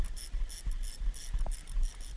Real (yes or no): yes